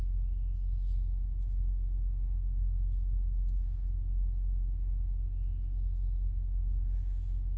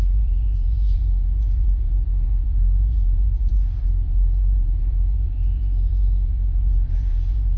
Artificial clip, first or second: second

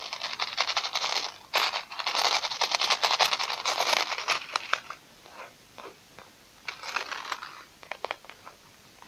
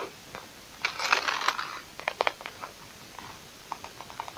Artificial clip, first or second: first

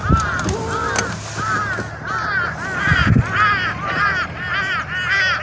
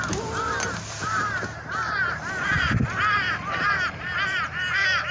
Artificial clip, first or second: second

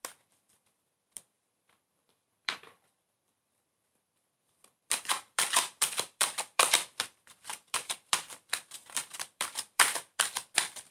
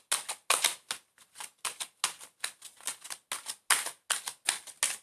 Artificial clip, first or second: first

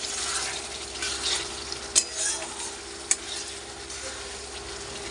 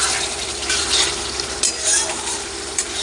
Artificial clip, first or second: second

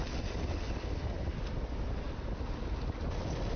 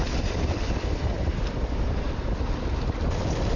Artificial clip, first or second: second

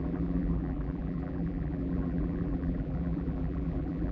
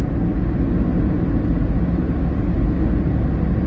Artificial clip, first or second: first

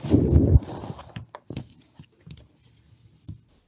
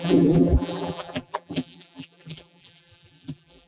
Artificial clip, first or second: second